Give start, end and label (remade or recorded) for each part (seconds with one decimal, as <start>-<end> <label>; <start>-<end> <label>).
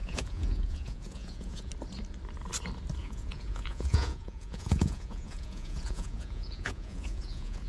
0.0-1.7 remade; 1.7-3.0 recorded; 3.0-7.7 remade